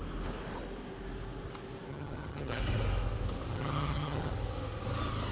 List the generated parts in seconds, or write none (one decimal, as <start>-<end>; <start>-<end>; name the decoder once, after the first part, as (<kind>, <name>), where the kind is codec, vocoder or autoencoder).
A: 1.9-2.6 (vocoder, HiFi-GAN); 3.5-4.3

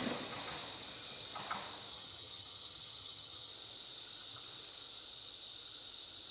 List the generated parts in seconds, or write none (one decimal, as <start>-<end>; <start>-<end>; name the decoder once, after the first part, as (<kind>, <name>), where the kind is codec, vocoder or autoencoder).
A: 1.9-3.5 (vocoder, HiFi-GAN)